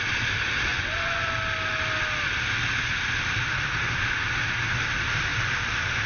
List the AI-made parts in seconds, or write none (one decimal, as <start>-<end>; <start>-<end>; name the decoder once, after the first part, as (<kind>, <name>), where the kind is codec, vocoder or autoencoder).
0.7-1.3 (vocoder, Vocos)